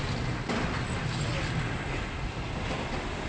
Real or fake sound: real